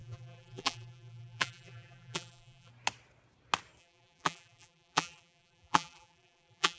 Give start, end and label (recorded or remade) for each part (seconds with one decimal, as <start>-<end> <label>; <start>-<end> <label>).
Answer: 0.0-2.7 remade; 2.7-3.8 recorded; 3.8-6.8 remade